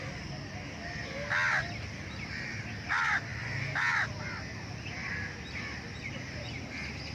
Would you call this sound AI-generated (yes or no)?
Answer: no